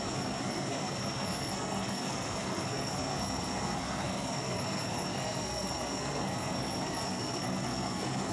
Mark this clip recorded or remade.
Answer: remade